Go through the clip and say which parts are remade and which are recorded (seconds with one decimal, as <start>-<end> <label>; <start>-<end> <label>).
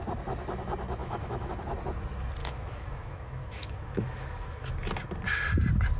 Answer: 0.0-1.0 recorded; 1.0-1.5 remade; 1.5-2.4 recorded; 2.4-4.7 remade; 4.7-6.0 recorded